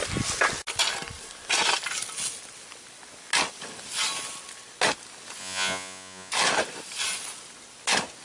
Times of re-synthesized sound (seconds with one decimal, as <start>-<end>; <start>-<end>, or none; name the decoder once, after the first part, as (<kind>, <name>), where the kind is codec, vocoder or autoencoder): 5.4-6.3 (vocoder, Vocos)